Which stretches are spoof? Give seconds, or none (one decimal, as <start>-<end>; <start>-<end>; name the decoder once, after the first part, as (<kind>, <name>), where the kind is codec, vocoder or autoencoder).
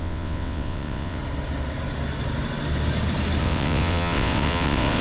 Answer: 0.0-1.2 (vocoder, WaveNeXt); 3.4-5.0